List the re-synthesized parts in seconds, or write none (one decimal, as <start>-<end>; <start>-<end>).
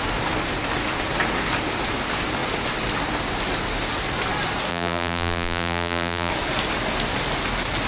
4.7-6.3